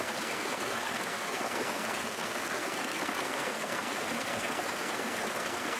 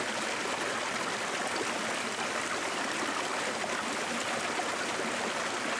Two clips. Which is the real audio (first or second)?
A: second